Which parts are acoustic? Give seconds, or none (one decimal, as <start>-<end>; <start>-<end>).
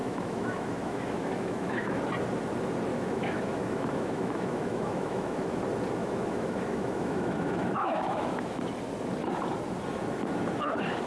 2.0-2.9; 5.6-6.0; 8.6-11.1